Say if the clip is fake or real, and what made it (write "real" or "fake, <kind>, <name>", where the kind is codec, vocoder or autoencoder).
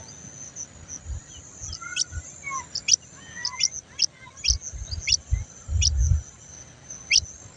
real